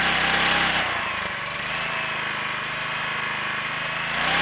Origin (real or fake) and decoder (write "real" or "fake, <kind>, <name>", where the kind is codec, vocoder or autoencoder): real